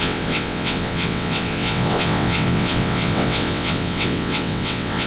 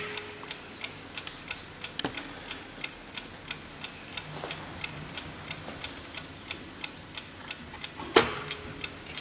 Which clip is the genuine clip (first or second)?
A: second